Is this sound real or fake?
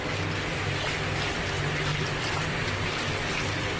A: real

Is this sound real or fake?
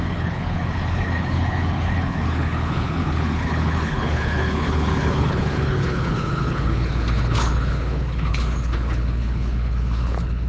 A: fake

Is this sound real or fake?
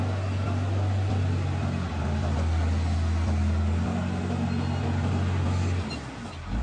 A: real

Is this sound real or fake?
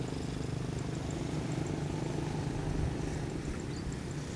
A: real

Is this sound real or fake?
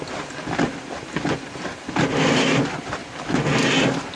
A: real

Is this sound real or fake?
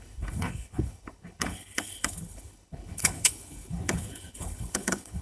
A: fake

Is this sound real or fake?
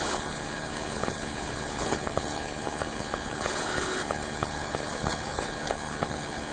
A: fake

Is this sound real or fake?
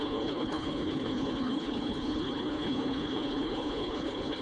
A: fake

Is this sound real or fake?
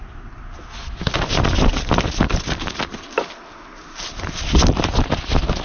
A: real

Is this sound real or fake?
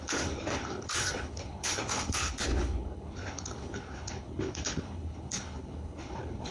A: fake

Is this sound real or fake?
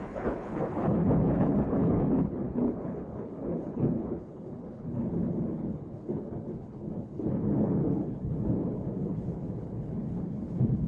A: fake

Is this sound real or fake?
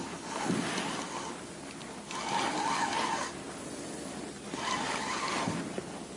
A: real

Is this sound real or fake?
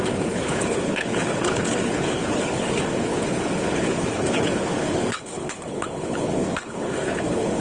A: fake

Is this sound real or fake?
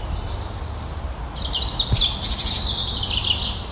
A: real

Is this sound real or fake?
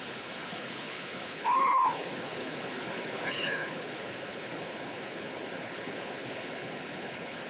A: fake